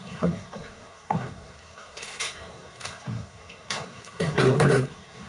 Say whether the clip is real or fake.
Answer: fake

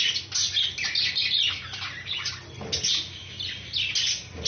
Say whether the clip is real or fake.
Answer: real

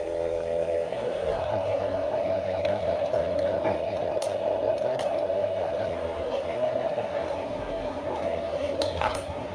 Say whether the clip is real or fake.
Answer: fake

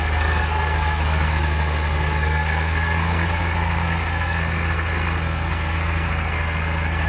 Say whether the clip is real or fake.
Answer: fake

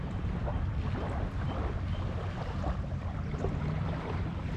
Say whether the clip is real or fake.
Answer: real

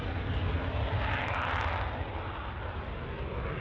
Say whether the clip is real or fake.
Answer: real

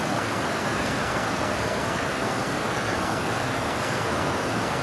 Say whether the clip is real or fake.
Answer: fake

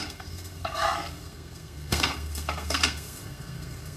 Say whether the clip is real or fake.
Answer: fake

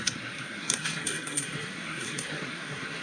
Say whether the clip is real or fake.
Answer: fake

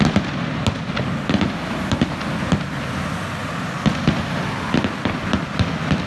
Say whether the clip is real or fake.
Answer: real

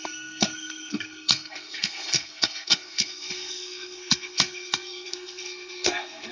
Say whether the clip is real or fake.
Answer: fake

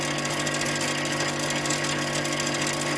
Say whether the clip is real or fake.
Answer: real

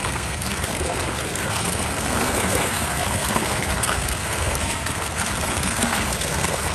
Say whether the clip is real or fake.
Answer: fake